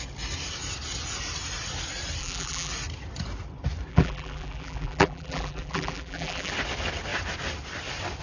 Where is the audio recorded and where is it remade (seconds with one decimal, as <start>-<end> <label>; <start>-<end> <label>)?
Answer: 0.0-2.2 recorded; 2.2-2.7 remade; 2.7-3.9 recorded; 3.9-6.5 remade; 6.5-8.2 recorded